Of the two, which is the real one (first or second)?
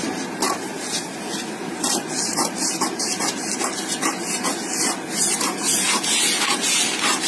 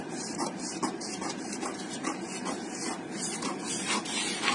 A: first